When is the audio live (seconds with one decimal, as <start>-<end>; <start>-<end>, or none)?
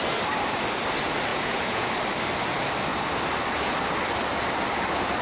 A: 0.0-1.3; 1.9-5.2